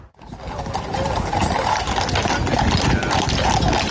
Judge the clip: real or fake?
real